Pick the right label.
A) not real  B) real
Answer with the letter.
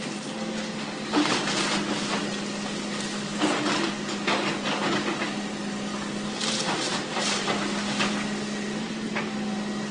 B